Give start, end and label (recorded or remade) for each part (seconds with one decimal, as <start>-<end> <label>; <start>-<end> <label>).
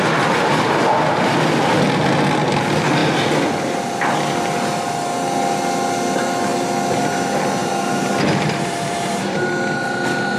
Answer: 0.0-7.6 recorded; 7.6-9.5 remade; 9.5-10.4 recorded